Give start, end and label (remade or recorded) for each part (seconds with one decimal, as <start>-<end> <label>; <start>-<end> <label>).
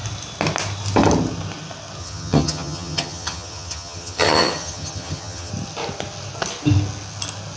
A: 0.0-2.0 recorded; 2.0-5.5 remade; 5.5-7.6 recorded